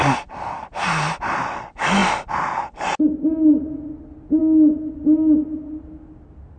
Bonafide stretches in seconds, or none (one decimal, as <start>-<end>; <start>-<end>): 0.0-6.6